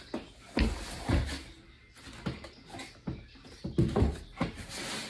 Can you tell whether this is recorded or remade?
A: recorded